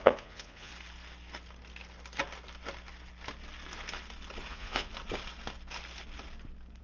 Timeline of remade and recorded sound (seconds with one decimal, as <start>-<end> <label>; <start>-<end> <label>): 0.0-0.7 remade; 0.7-4.5 recorded; 4.5-4.9 remade; 4.9-6.8 recorded